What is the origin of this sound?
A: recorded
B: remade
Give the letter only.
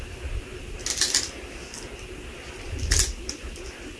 A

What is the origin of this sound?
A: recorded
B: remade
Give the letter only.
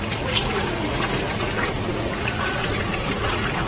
B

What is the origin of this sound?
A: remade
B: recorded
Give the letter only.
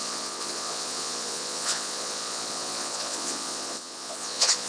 A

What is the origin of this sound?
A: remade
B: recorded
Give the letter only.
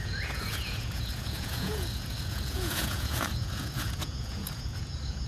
A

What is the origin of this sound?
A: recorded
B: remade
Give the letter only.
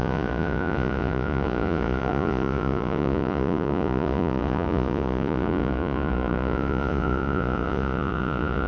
B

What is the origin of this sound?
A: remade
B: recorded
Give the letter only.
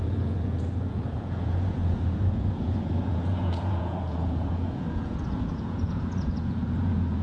A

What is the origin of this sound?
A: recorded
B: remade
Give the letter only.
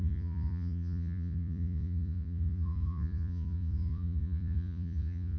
B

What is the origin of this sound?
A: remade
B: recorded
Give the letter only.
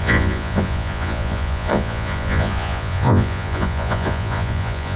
A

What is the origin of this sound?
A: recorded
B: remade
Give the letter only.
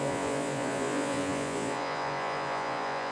B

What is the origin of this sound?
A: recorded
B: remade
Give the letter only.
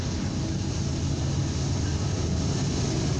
A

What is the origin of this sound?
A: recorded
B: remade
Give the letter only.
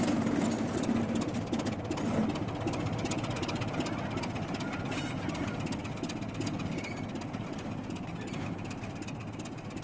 A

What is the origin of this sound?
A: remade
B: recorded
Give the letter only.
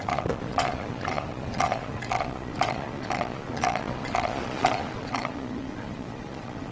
A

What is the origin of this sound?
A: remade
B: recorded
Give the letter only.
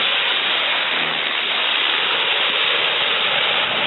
B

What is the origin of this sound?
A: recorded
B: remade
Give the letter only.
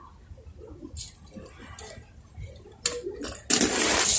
A